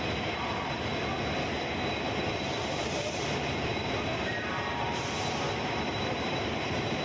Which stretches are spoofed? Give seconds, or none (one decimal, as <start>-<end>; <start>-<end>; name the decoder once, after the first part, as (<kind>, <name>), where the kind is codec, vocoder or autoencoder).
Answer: 2.6-7.0 (vocoder, BigVGAN v2)